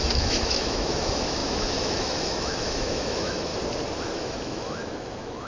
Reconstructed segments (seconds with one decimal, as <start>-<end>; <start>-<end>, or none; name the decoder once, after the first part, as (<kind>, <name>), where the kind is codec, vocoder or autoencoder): 0.0-3.5 (autoencoder, DAC-VAE); 4.0-5.5